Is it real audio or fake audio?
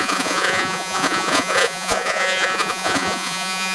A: fake